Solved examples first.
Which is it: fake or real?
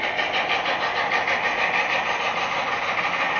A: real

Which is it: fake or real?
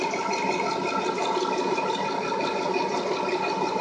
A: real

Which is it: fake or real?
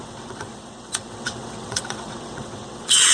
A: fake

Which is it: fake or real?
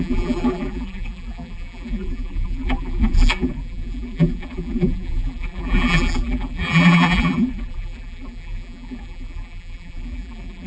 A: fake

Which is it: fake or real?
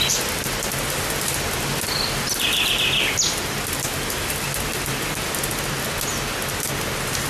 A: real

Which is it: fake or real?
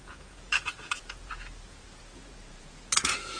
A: fake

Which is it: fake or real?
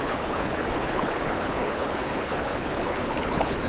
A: fake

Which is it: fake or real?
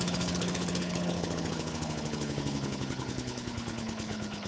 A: fake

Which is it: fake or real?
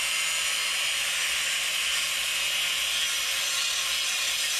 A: real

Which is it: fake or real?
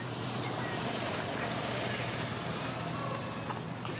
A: real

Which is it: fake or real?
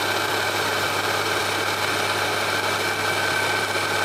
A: real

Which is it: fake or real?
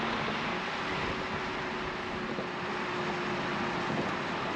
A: real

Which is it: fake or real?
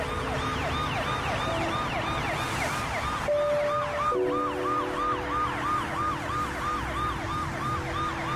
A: real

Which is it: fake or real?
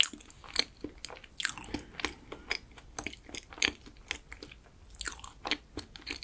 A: real